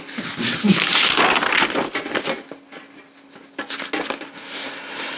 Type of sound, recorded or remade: recorded